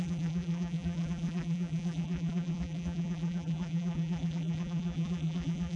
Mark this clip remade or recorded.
remade